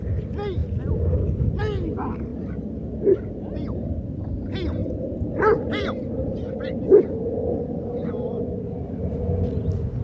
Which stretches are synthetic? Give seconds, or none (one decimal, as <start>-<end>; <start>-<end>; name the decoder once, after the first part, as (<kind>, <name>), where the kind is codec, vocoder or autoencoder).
4.8-8.4 (vocoder, BigVGAN v2)